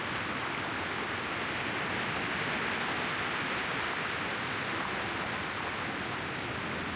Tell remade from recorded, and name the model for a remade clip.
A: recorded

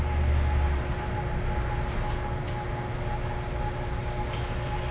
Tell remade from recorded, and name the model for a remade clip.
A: recorded